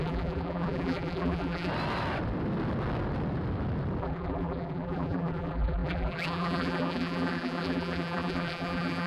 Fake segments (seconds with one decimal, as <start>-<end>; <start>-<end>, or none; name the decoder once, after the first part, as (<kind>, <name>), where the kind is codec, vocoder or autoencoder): 0.0-1.7 (vocoder, BigVGAN v2); 4.0-9.1